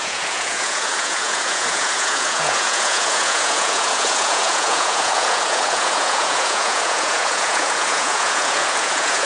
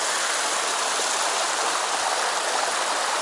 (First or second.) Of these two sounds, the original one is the second